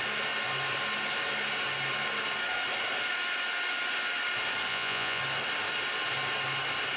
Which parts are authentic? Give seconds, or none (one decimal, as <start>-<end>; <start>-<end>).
0.0-4.7; 5.2-7.0